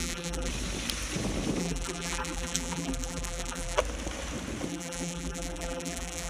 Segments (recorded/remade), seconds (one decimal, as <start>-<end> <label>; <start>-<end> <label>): 0.0-0.5 remade; 0.5-1.6 recorded; 1.6-3.8 remade; 3.8-4.7 recorded; 4.7-6.3 remade